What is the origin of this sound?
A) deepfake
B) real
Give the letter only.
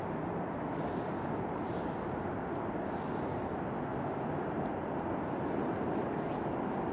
B